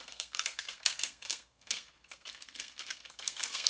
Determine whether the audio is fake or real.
fake